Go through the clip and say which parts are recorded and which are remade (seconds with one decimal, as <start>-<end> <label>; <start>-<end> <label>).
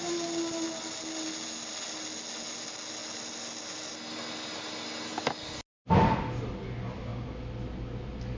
0.0-8.4 recorded